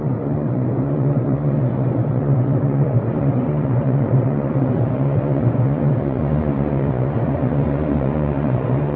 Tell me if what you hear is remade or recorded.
remade